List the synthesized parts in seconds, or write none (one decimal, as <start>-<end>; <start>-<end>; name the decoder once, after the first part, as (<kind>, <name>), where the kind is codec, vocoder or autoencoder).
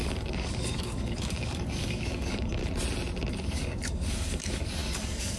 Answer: 0.0-2.6 (codec, DAC); 3.3-5.4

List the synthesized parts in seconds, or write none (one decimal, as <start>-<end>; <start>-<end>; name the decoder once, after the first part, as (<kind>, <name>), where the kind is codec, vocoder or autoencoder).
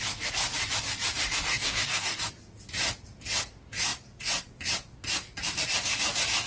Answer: 1.5-2.3 (codec, DAC)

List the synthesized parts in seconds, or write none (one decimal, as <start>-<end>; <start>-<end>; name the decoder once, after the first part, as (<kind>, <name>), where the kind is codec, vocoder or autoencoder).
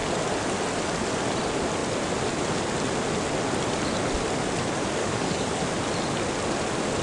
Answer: 5.0-5.6 (codec, DAC)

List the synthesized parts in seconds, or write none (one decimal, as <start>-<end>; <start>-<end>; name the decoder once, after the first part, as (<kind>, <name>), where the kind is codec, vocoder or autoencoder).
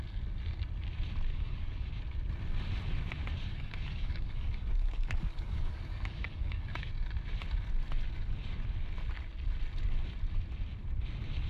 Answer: 1.3-1.9 (codec, DAC); 3.5-6.9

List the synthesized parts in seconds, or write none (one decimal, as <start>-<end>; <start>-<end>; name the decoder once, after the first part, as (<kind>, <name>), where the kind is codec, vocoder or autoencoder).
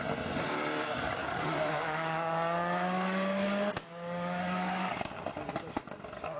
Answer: 1.2-5.0 (codec, DAC)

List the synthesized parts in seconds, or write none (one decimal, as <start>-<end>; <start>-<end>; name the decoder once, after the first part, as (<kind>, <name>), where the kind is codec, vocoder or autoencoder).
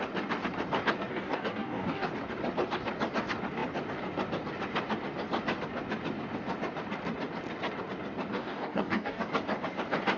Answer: 1.1-2.1 (codec, DAC); 8.3-9.2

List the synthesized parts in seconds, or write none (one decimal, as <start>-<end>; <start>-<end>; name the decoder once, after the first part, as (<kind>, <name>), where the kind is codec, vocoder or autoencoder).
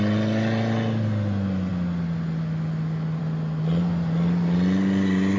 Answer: none